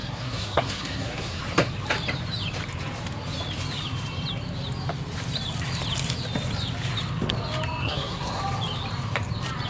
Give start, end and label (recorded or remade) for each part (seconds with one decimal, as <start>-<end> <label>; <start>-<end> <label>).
0.0-1.4 remade; 1.4-7.8 recorded; 7.8-8.4 remade; 8.4-9.7 recorded